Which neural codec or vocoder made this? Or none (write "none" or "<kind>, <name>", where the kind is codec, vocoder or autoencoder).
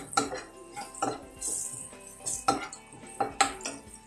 none